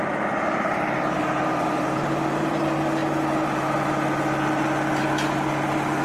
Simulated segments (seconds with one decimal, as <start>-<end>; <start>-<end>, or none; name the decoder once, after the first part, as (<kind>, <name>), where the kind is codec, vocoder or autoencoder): 1.2-2.6 (vocoder, BigVGAN v2)